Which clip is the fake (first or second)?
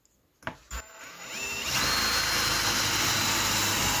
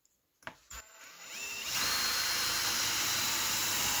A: second